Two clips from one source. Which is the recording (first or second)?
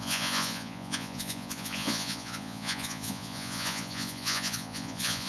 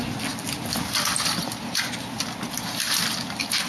second